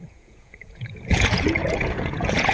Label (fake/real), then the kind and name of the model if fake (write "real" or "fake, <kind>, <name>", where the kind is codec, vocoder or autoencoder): fake, vocoder, Vocos